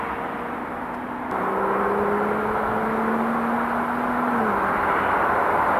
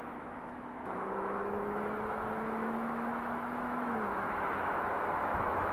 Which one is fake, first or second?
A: second